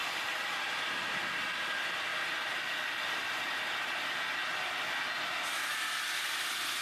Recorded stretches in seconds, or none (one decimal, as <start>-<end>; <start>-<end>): 0.0-6.8